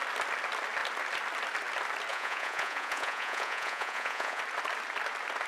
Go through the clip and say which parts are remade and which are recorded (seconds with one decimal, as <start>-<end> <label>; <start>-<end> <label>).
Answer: 0.0-2.1 recorded; 2.1-4.4 remade; 4.4-5.5 recorded